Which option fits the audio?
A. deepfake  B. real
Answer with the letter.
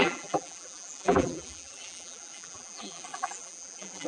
A